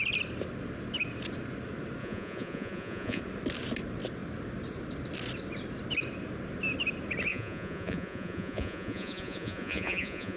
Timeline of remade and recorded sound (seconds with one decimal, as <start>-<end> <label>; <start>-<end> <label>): 0.0-2.0 recorded; 2.0-3.2 remade; 3.2-7.3 recorded; 7.3-10.4 remade